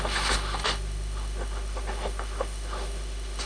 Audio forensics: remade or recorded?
remade